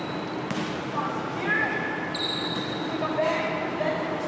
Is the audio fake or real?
real